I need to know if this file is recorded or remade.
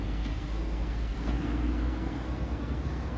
remade